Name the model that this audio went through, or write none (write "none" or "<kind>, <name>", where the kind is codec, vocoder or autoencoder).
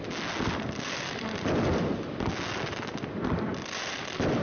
none